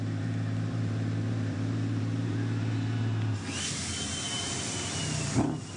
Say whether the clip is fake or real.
fake